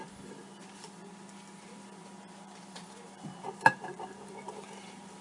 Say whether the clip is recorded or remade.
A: remade